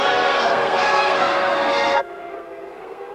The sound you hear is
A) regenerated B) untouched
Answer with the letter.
A